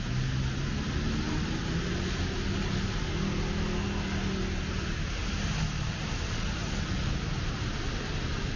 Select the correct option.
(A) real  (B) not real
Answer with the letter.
A